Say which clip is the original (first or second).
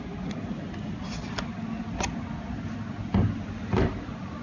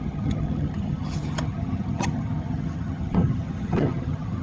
first